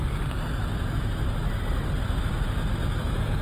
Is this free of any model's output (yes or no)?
yes